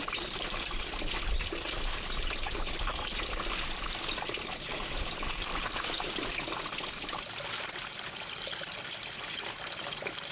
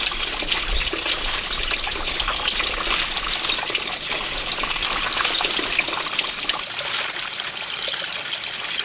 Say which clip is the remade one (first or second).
first